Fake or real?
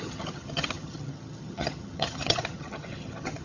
fake